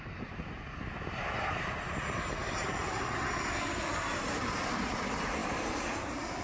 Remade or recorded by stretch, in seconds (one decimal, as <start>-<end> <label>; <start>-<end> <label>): 0.0-2.4 recorded; 2.4-3.2 remade; 3.2-4.1 recorded; 4.1-5.0 remade; 5.0-5.4 recorded; 5.4-6.4 remade